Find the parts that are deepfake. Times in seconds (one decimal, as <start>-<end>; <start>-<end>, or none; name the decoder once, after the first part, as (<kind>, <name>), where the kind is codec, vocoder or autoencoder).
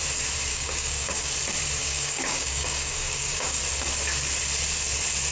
0.5-1.3 (codec, DAC); 1.8-3.6